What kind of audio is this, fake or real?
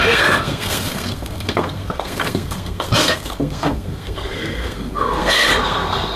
fake